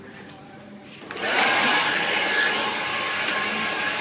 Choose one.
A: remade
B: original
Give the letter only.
A